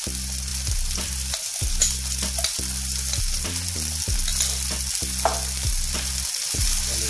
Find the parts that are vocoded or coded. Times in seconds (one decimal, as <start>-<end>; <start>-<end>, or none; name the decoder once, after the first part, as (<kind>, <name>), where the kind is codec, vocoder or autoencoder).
0.5-3.2 (vocoder, BigVGAN v2); 4.3-4.9